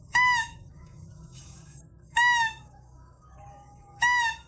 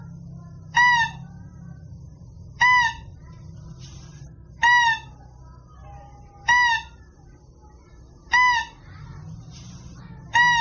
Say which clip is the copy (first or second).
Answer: first